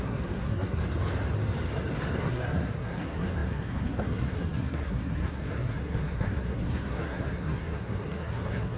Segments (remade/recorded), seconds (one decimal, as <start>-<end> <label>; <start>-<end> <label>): 0.0-0.8 remade; 0.8-2.2 recorded; 2.2-8.8 remade